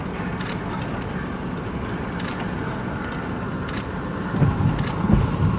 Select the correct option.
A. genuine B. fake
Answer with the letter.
A